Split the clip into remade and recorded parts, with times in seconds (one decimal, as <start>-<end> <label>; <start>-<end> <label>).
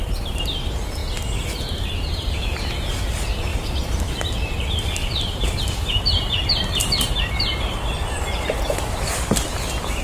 0.0-3.5 recorded; 3.5-4.3 remade; 4.3-5.0 recorded; 5.0-10.0 remade